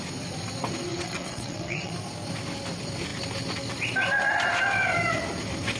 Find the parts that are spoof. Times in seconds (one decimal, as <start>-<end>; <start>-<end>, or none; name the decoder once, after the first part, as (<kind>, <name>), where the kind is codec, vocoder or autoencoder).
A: 0.9-1.9 (vocoder, WaveNeXt)